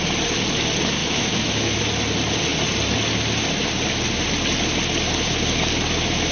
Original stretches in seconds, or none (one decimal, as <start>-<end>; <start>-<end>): 0.0-1.0; 1.8-6.3